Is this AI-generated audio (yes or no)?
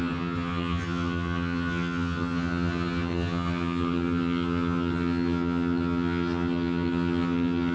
yes